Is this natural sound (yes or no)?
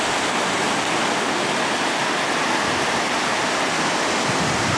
yes